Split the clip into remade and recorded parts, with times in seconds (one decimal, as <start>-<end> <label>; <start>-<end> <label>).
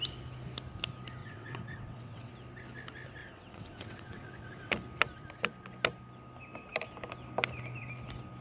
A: 0.0-1.2 recorded; 1.2-2.3 remade; 2.3-3.2 recorded; 3.2-4.7 remade; 4.7-8.4 recorded